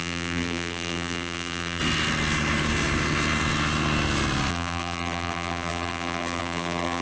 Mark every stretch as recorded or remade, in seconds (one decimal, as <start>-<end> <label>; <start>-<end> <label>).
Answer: 0.0-1.8 remade; 1.8-4.5 recorded; 4.5-7.0 remade